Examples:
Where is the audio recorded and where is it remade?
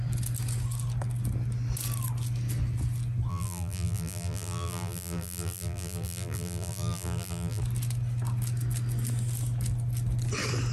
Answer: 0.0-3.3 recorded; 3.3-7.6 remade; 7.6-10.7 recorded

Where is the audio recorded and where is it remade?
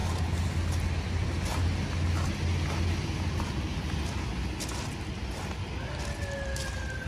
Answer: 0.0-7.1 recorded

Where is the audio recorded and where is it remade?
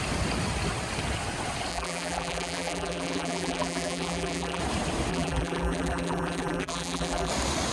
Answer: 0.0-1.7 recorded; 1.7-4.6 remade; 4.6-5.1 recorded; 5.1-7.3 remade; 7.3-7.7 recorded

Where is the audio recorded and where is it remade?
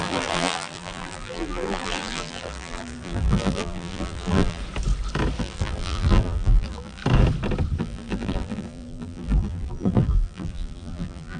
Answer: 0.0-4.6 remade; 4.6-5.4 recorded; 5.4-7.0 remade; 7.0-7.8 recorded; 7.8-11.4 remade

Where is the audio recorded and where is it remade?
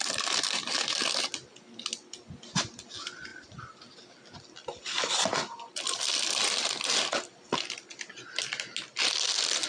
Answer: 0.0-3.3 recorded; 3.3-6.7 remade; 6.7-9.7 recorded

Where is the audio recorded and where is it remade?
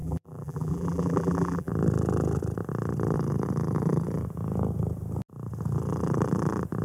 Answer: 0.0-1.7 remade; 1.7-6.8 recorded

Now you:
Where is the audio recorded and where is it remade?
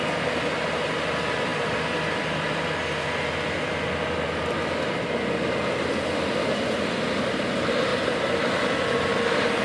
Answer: 0.0-1.5 recorded; 1.5-2.6 remade; 2.6-9.6 recorded